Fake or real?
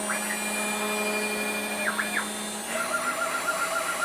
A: real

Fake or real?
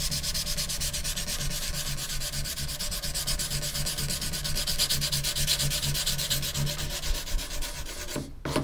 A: real